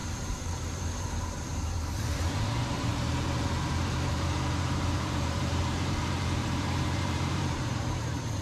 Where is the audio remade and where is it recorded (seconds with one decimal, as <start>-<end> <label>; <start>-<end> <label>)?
0.0-8.4 remade